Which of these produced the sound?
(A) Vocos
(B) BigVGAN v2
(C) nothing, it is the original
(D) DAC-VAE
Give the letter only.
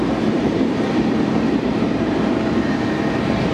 B